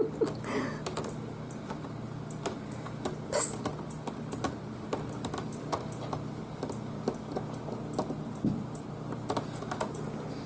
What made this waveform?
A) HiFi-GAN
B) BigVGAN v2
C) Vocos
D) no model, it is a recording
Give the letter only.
D